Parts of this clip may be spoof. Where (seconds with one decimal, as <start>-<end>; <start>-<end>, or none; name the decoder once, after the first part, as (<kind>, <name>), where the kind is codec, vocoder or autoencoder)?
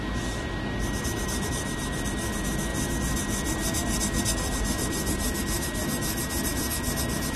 none